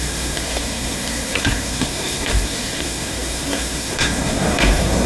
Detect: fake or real fake